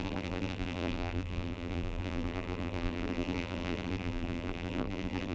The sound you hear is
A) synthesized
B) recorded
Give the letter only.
A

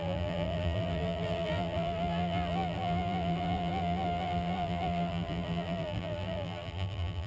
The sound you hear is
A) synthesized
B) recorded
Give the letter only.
A